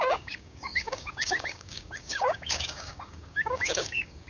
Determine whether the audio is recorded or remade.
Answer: remade